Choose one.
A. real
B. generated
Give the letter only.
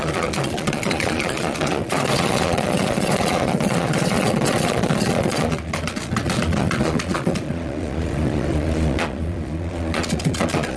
B